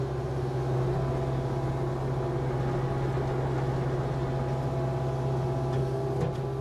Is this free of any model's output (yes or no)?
yes